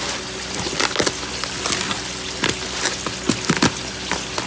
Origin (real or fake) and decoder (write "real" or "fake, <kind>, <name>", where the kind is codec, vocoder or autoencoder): real